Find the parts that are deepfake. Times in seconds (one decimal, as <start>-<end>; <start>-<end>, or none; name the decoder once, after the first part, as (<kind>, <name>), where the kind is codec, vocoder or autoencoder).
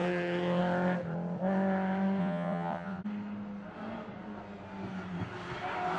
2.2-3.0 (vocoder, WaveNeXt)